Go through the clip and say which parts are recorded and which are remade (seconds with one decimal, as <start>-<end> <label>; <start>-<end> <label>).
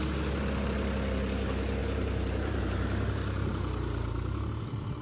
0.0-1.8 recorded; 1.8-2.6 remade; 2.6-5.0 recorded